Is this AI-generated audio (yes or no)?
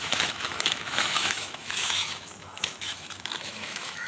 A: yes